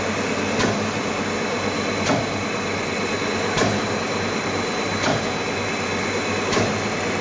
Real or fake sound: real